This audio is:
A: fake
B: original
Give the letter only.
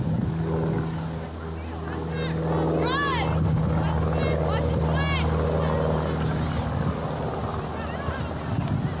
B